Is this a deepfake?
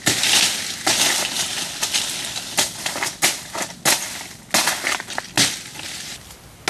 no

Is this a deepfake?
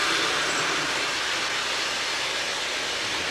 no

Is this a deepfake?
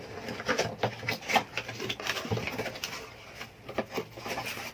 no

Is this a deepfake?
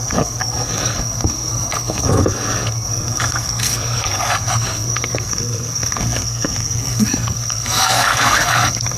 yes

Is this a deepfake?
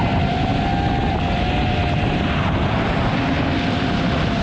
no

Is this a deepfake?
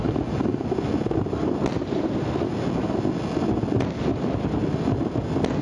no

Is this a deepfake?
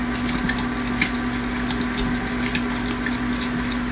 no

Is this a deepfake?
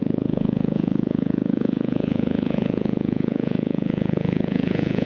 yes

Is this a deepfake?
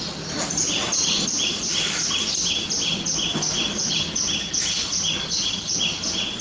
no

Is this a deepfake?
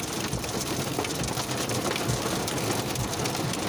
no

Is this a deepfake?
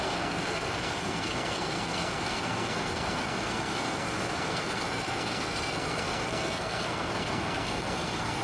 yes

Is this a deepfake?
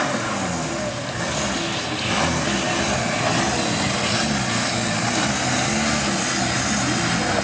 no